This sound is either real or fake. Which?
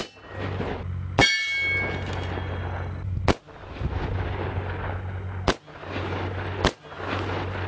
real